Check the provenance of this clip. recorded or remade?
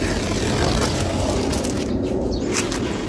recorded